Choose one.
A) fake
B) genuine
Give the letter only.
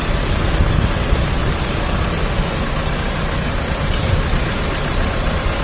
A